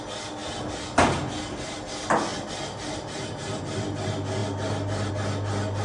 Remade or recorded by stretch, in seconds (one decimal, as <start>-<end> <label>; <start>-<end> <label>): 0.0-5.8 recorded